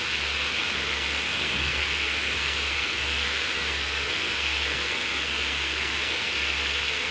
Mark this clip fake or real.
fake